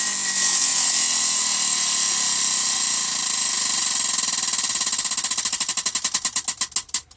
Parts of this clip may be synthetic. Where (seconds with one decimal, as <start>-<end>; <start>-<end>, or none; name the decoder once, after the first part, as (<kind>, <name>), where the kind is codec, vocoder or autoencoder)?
none